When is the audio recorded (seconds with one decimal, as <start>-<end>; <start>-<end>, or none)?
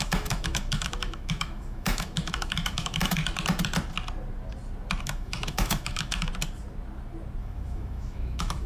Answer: 3.2-5.0; 6.3-7.4